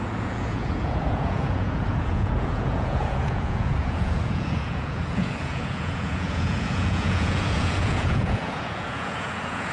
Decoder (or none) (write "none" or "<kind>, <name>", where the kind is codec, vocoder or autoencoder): vocoder, Vocos